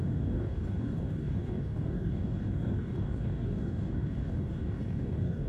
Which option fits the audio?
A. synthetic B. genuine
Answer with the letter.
A